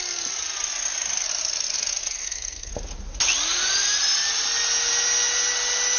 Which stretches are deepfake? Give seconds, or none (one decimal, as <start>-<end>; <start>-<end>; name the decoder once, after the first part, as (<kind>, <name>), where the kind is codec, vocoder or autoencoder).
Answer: 2.0-2.7 (codec, SNAC)